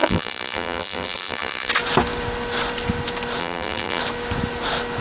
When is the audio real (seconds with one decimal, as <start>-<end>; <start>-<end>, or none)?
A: 1.7-3.4; 4.0-5.0